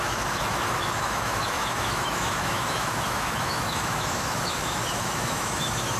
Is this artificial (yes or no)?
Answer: yes